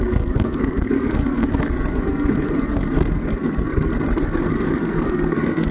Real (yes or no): no